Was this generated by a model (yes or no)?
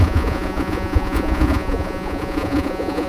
yes